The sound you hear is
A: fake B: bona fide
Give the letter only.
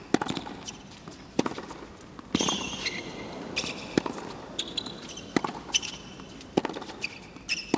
B